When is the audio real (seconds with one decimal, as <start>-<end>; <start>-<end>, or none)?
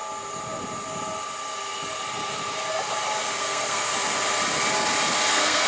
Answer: 0.0-3.4; 3.9-5.3